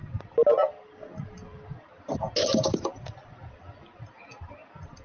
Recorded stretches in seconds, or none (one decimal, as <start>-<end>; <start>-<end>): 0.0-5.0